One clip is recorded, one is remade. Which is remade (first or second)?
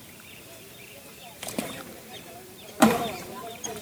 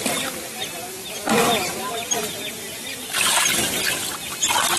first